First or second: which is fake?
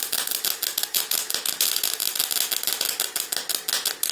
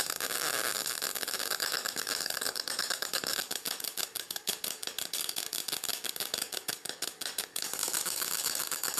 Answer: second